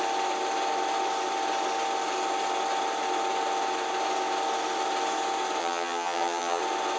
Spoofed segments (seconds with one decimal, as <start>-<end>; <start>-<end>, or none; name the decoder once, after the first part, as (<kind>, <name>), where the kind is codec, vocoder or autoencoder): 5.6-6.6 (vocoder, HiFi-GAN)